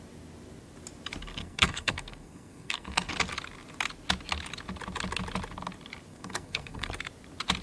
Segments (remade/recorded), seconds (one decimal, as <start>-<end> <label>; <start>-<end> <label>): 0.0-1.4 recorded; 1.4-3.1 remade; 3.1-6.1 recorded; 6.1-6.9 remade; 6.9-7.6 recorded